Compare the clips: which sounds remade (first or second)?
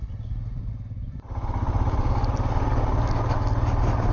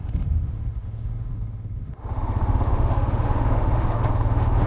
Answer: second